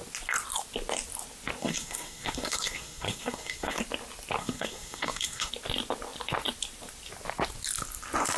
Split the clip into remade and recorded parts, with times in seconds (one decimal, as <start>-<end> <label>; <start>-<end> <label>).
0.0-1.6 recorded; 1.6-3.8 remade; 3.8-4.4 recorded; 4.4-5.5 remade; 5.5-8.4 recorded